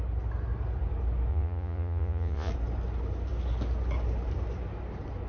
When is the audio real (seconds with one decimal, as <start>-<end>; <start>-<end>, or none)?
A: 0.0-1.3; 2.5-5.3

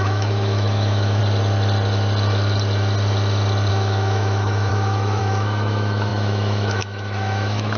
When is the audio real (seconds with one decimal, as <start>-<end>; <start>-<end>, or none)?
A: 1.2-3.7